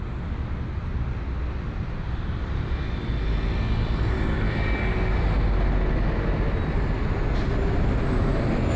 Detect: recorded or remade recorded